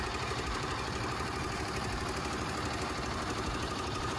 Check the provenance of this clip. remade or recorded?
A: remade